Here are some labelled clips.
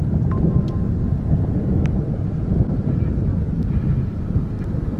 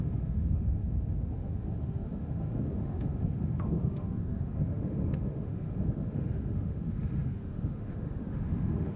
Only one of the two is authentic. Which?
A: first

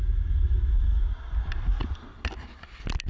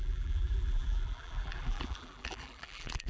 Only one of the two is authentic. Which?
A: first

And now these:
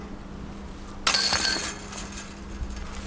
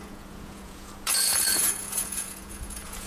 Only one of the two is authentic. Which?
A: first